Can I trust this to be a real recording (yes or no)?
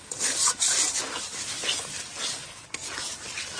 yes